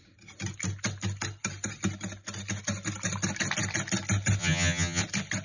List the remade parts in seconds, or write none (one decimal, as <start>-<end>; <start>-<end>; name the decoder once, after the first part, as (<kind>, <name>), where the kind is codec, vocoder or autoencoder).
4.4-5.0 (vocoder, HiFi-GAN)